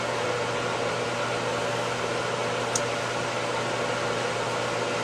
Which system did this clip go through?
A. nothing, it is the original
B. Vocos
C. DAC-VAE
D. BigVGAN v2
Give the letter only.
A